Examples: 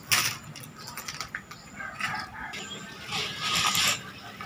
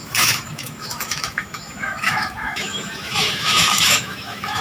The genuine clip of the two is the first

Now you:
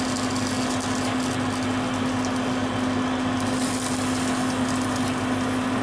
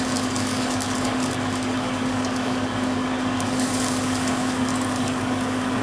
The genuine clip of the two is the first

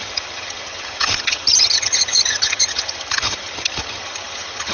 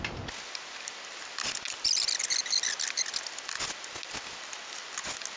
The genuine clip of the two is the second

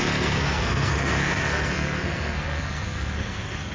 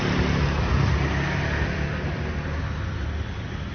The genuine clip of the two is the second